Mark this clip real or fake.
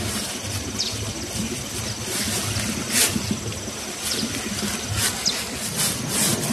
real